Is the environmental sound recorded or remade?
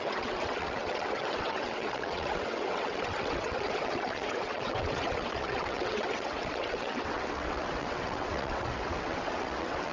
remade